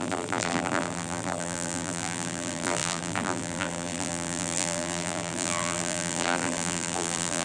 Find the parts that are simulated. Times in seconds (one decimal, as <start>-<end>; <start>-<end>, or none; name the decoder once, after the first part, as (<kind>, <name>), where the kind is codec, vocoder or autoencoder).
0.0-7.4 (vocoder, BigVGAN v2)